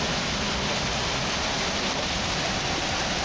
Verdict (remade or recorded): recorded